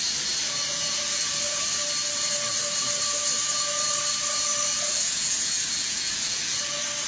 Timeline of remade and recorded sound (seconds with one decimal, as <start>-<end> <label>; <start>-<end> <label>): 0.0-0.7 recorded; 0.7-1.2 remade; 1.2-4.7 recorded; 4.7-6.6 remade; 6.6-7.1 recorded